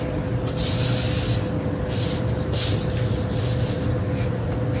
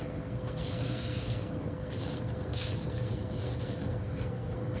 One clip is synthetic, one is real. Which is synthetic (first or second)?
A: second